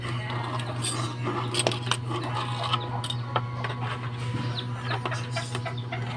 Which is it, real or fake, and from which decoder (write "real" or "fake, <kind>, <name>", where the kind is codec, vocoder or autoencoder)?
real